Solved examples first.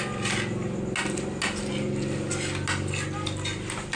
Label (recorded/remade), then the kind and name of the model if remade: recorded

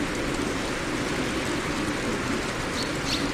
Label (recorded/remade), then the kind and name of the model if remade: recorded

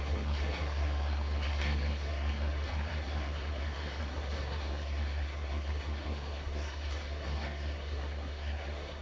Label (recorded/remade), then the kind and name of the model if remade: remade, codec, SNAC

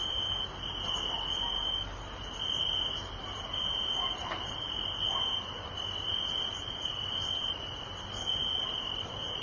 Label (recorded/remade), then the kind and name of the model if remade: recorded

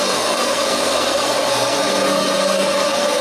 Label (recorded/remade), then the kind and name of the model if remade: remade, codec, SNAC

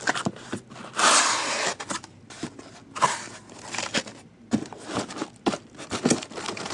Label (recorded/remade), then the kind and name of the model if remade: recorded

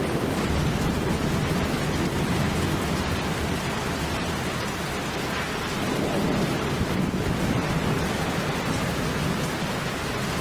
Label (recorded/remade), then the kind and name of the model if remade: recorded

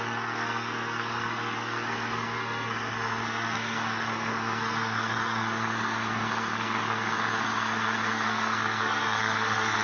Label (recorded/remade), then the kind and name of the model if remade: remade, codec, SNAC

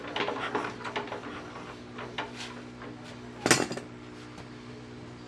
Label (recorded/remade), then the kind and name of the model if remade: recorded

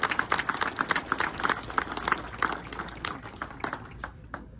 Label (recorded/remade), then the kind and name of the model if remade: recorded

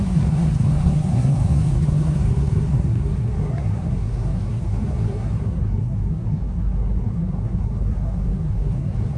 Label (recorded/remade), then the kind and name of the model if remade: remade, codec, SNAC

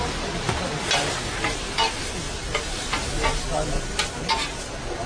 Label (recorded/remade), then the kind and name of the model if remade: recorded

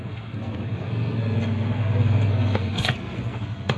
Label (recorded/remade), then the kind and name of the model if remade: remade, codec, SNAC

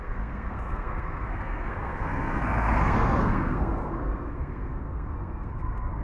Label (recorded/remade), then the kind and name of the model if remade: remade, codec, SNAC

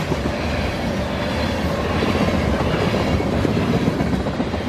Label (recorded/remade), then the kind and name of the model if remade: recorded